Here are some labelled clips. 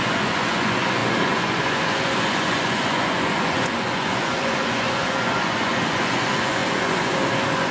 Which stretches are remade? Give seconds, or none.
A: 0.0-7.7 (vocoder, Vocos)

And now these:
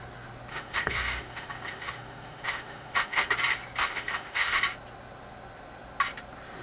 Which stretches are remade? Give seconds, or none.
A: 0.5-3.3 (autoencoder, DAC-VAE); 3.8-4.6

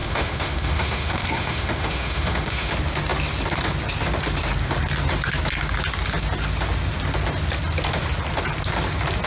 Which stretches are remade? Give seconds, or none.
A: 0.0-2.7 (autoencoder, DAC-VAE)

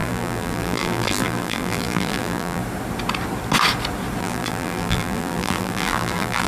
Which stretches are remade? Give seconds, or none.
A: 0.0-2.6 (vocoder, BigVGAN v2); 4.2-6.5

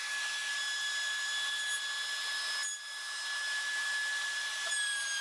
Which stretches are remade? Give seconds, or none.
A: none

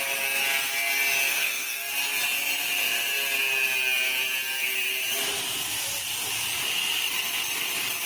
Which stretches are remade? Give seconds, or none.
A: 1.3-1.9 (codec, SNAC)

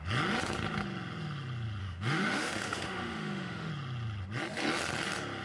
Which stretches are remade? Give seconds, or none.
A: 1.8-3.7 (autoencoder, DAC-VAE)

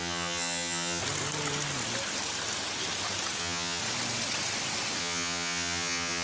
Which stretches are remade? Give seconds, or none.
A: 0.0-1.0 (vocoder, HiFi-GAN); 3.4-3.8; 5.0-6.2